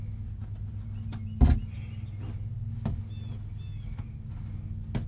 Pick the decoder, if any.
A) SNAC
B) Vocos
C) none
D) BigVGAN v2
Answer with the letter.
C